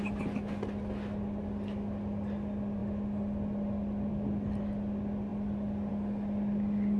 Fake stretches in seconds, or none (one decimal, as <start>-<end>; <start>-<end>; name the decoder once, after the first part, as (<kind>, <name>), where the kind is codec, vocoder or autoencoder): none